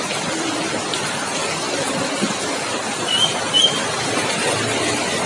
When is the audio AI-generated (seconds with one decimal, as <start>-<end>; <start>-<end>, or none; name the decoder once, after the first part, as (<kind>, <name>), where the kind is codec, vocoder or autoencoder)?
none